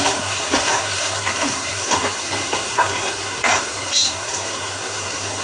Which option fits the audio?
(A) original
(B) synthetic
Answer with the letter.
B